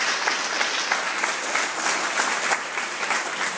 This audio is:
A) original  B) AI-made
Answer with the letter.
A